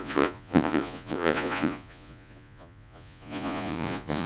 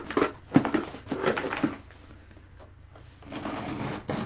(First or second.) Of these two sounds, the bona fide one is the second